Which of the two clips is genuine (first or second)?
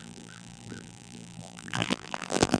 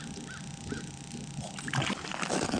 second